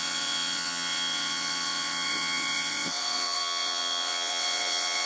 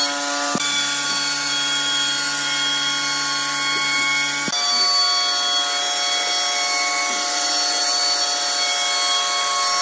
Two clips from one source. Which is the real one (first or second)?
second